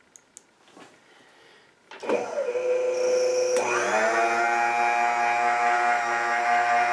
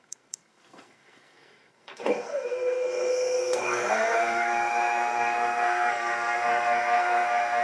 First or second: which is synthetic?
second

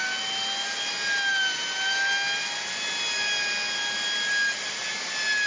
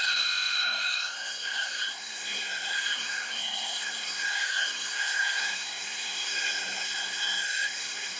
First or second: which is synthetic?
second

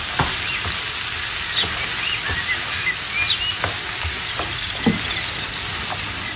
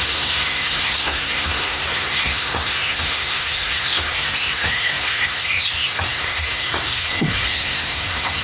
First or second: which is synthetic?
second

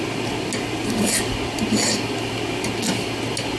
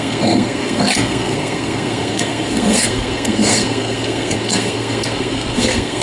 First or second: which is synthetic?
second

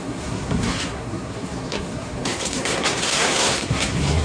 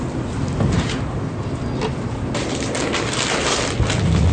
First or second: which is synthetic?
first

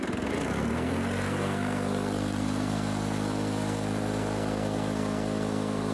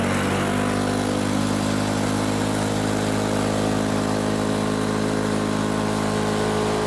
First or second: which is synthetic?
first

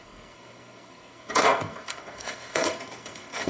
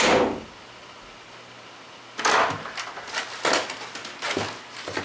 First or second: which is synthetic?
first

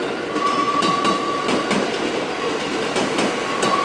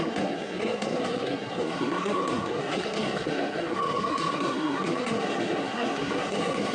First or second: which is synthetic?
second